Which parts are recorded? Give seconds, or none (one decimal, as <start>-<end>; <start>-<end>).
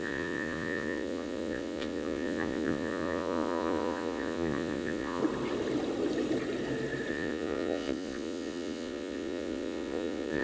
5.2-7.1